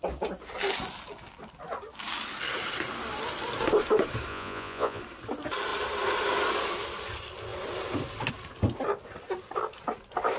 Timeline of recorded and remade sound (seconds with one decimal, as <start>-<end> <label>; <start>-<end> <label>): 0.0-4.3 recorded; 4.3-5.0 remade; 5.0-10.4 recorded